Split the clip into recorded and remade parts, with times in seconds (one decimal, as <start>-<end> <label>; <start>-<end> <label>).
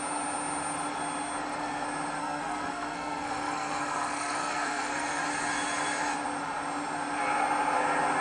0.0-2.2 recorded; 2.2-5.2 remade; 5.2-8.2 recorded